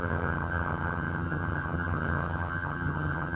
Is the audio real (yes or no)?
no